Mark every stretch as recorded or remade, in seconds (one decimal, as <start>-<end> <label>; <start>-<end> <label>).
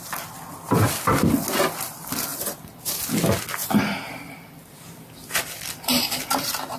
0.0-2.3 recorded; 2.3-2.9 remade; 2.9-3.6 recorded; 3.6-6.2 remade; 6.2-6.8 recorded